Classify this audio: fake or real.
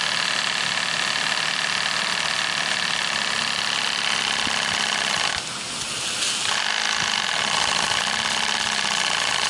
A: real